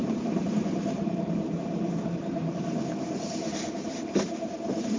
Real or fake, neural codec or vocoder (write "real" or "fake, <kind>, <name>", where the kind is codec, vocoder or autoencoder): fake, vocoder, BigVGAN v2